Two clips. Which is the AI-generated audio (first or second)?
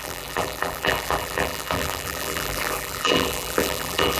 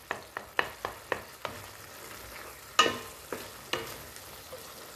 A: first